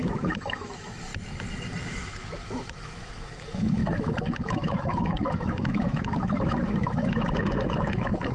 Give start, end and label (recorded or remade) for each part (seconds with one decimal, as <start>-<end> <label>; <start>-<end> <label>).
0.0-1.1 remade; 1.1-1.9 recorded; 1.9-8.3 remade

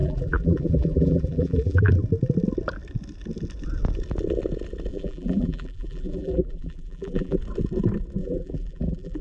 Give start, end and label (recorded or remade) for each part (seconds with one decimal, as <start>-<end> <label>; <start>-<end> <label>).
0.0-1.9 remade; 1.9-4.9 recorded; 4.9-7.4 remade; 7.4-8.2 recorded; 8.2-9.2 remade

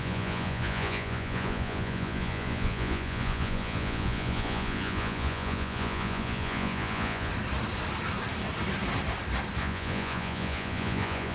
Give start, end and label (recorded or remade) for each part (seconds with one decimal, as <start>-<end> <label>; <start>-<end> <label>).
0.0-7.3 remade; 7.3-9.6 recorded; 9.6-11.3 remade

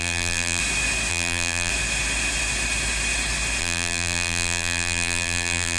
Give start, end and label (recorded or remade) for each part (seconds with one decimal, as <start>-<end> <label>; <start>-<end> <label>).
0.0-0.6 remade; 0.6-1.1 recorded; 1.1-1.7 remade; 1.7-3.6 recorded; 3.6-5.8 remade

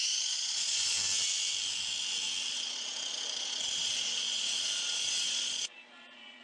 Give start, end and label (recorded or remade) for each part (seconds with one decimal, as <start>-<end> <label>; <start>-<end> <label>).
0.0-1.0 remade; 1.0-2.5 recorded; 2.5-6.4 remade

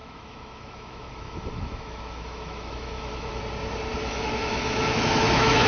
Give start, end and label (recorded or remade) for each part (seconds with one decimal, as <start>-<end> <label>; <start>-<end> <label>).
0.0-3.4 remade; 3.4-4.0 recorded; 4.0-5.7 remade

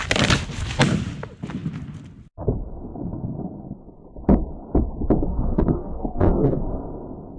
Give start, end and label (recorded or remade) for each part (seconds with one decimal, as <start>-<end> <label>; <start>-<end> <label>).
0.0-5.3 recorded; 5.3-6.6 remade; 6.6-7.4 recorded

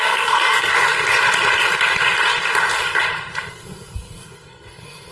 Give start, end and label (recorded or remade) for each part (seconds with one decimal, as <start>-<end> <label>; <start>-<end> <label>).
0.0-0.7 remade; 0.7-3.5 recorded; 3.5-5.1 remade